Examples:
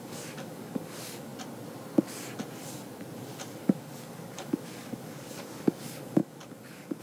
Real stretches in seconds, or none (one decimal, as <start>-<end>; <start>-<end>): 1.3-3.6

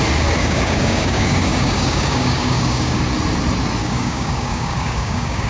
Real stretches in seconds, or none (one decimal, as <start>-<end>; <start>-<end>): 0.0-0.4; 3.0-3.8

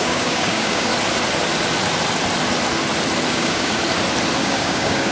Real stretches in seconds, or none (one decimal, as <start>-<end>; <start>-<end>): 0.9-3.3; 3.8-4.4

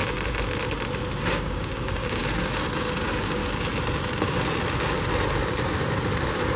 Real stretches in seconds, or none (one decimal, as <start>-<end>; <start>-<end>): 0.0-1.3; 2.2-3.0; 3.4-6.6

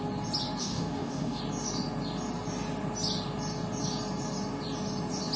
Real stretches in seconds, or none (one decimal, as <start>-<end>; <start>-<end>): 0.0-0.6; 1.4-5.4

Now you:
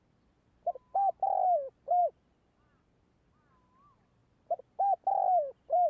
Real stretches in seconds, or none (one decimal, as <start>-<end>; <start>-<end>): 0.0-5.9